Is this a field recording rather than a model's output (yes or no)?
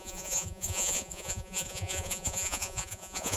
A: no